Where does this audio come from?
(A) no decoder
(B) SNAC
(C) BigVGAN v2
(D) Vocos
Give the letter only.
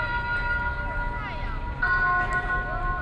A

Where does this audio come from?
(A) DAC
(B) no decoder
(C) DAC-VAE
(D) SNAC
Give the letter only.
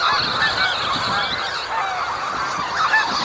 B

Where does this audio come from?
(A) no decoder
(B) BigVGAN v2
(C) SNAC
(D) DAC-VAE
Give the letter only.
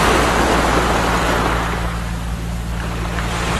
A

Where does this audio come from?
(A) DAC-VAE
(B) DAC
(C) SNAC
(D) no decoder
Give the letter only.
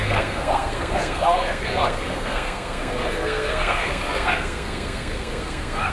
C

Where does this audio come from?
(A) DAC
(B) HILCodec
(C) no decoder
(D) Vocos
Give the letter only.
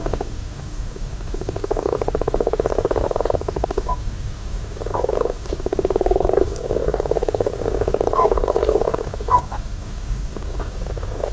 A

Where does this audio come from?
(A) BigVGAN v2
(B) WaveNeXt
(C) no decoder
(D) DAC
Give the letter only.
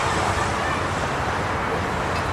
C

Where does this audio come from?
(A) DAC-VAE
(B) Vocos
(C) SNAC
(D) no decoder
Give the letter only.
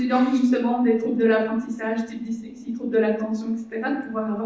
D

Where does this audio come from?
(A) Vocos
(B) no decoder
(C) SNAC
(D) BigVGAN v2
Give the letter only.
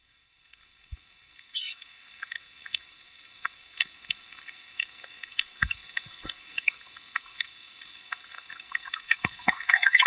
C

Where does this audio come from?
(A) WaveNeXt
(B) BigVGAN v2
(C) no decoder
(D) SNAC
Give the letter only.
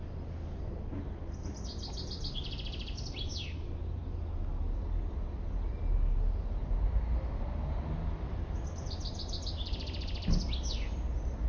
C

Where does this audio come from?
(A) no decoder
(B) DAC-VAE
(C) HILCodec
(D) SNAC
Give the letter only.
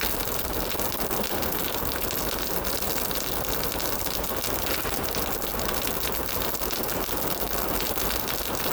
A